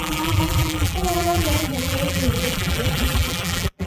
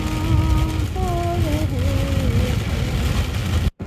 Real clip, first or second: second